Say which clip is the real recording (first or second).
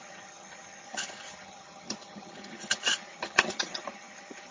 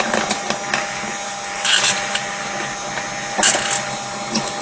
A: second